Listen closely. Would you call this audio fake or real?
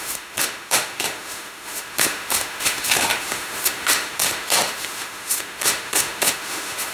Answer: fake